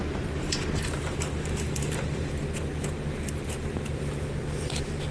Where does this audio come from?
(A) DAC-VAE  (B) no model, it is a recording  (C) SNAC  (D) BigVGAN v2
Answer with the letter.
D